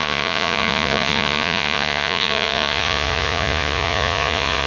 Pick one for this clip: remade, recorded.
remade